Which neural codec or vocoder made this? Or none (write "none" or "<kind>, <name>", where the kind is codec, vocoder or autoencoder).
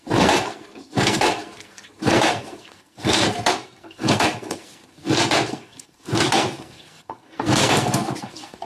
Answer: codec, SNAC